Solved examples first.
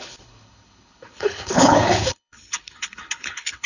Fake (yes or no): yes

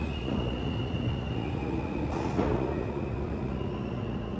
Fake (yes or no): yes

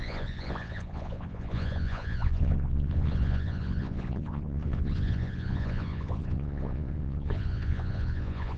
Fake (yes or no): yes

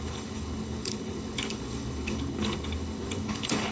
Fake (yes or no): yes